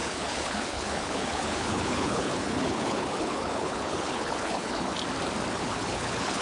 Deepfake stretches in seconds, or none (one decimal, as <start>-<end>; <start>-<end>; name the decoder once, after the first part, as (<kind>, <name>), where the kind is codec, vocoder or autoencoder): 0.0-4.9 (codec, HILCodec); 5.5-6.4

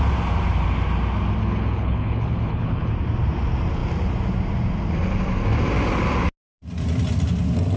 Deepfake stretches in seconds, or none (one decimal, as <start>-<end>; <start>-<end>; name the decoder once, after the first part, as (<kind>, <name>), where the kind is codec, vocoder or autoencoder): 1.4-2.9 (codec, HILCodec)